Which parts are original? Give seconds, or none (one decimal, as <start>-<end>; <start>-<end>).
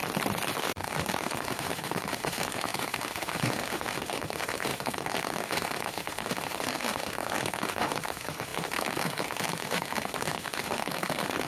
0.0-0.6